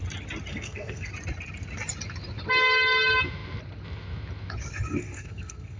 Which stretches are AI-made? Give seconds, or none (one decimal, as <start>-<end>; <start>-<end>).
0.5-1.1; 5.0-5.8